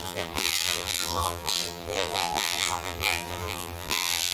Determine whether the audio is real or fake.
fake